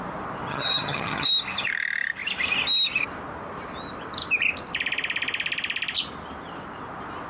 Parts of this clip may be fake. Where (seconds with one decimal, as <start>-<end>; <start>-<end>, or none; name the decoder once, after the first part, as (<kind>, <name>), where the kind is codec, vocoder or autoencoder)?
0.5-1.3 (vocoder, HiFi-GAN)